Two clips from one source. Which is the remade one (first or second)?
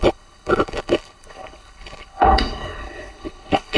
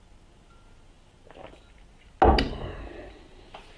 first